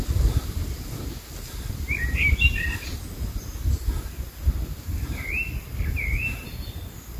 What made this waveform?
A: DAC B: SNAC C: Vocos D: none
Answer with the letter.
D